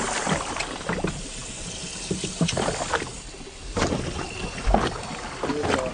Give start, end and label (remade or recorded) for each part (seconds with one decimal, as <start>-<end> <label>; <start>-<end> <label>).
0.0-5.9 recorded